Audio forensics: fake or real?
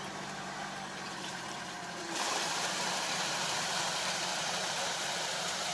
fake